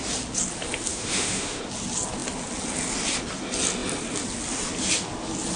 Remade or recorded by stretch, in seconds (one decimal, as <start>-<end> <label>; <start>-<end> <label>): 0.0-0.9 recorded; 0.9-1.6 remade; 1.6-5.6 recorded